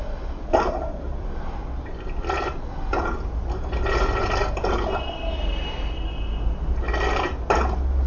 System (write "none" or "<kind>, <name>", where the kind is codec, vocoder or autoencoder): none